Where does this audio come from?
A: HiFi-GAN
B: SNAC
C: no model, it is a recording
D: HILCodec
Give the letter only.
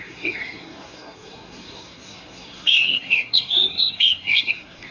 B